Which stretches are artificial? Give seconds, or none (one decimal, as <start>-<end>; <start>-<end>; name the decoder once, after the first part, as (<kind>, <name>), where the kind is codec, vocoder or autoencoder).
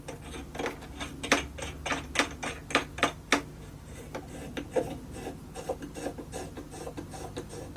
none